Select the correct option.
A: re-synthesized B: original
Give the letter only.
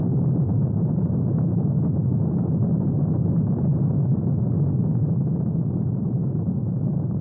B